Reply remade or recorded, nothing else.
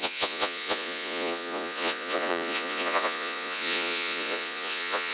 remade